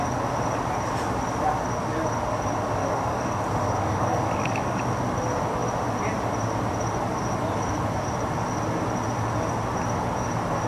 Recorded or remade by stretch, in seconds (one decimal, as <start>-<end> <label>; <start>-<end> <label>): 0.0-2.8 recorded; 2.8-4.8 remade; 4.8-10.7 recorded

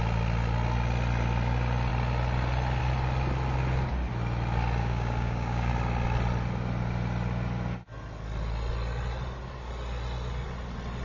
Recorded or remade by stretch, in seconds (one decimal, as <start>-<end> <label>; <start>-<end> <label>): 0.0-4.8 recorded; 4.8-5.7 remade; 5.7-11.0 recorded

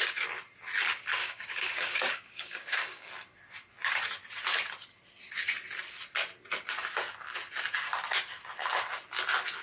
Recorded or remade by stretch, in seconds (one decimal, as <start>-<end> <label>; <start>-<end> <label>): 0.0-1.2 recorded; 1.2-3.1 remade; 3.1-9.6 recorded